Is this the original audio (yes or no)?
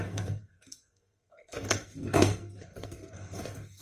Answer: no